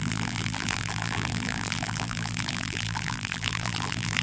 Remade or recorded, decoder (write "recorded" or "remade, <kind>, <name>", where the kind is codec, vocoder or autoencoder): remade, vocoder, BigVGAN v2